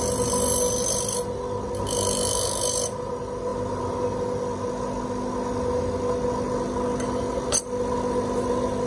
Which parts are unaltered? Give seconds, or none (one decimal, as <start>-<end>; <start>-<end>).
0.0-8.9